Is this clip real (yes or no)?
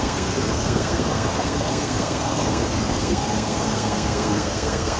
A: no